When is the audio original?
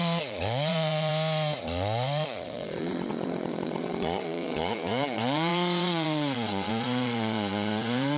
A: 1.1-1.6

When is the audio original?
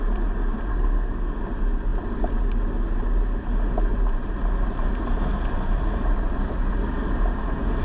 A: 0.0-0.7; 1.4-7.8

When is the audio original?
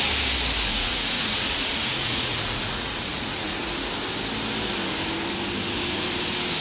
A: 0.0-0.7; 3.7-6.6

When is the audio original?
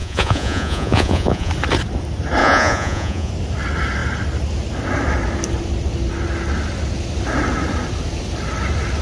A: 1.5-2.4; 3.3-9.0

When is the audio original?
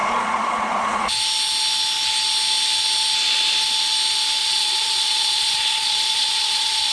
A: 1.1-4.4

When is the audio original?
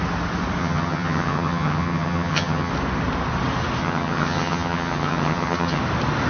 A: 0.0-0.6; 2.7-3.8; 5.8-6.3